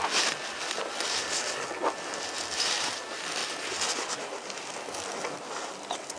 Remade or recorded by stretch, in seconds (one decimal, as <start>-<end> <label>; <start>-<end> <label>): 0.0-6.2 recorded